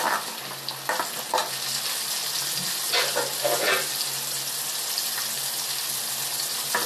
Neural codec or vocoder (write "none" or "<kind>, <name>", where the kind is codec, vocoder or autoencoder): none